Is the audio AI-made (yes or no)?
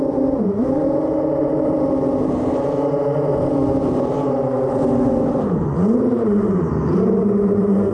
yes